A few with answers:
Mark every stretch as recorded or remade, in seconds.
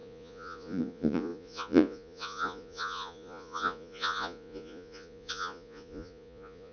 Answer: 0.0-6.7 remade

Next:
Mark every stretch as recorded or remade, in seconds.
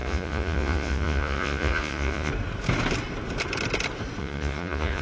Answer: 0.0-2.3 remade; 2.3-4.2 recorded; 4.2-5.0 remade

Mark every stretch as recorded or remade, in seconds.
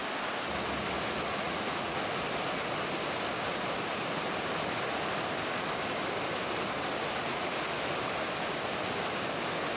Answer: 0.0-1.3 recorded; 1.3-2.0 remade; 2.0-7.3 recorded; 7.3-7.8 remade; 7.8-9.8 recorded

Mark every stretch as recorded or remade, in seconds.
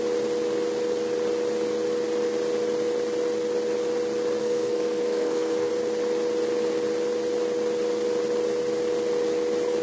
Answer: 0.0-4.4 recorded; 4.4-5.7 remade; 5.7-9.8 recorded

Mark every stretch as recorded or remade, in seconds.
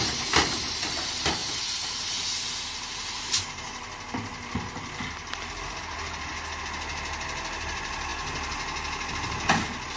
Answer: 0.0-10.0 recorded